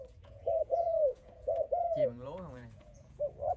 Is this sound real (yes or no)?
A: no